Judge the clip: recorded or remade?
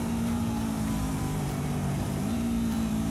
remade